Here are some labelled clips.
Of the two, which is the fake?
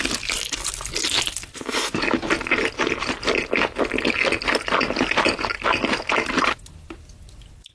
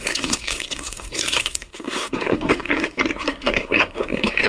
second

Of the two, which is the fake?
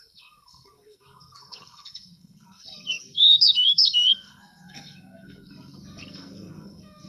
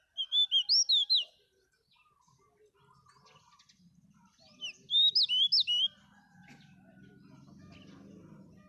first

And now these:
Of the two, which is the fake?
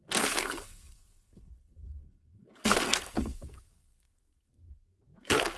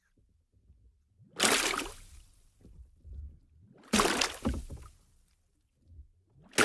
first